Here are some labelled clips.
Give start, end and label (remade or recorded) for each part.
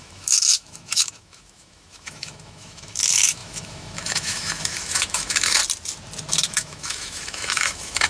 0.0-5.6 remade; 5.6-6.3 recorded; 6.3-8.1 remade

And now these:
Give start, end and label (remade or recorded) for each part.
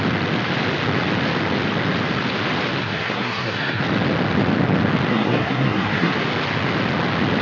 0.0-2.8 recorded; 2.8-3.8 remade; 3.8-5.1 recorded; 5.1-6.1 remade; 6.1-7.4 recorded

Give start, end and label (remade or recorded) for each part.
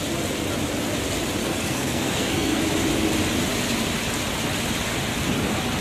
0.0-1.4 recorded; 1.4-2.6 remade; 2.6-5.8 recorded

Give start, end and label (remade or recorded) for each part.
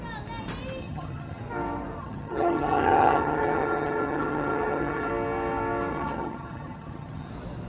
0.0-0.8 recorded; 0.8-1.4 remade; 1.4-2.0 recorded; 2.0-5.1 remade; 5.1-5.9 recorded; 5.9-7.3 remade; 7.3-7.7 recorded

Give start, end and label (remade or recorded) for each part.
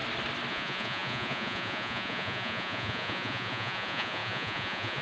0.0-0.5 recorded; 0.5-5.0 remade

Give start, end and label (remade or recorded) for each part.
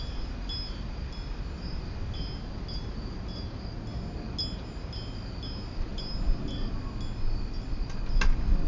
0.0-8.7 recorded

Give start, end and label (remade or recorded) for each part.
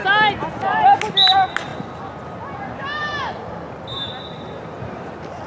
0.0-5.5 recorded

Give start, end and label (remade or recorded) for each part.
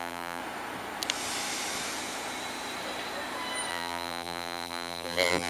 0.0-0.4 remade; 0.4-3.7 recorded; 3.7-5.5 remade